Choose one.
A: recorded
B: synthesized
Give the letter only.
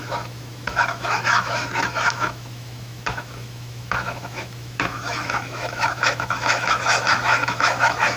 B